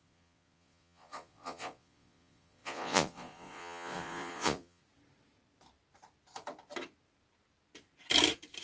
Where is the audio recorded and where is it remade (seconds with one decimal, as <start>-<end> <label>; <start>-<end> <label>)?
0.0-4.8 remade; 4.8-8.6 recorded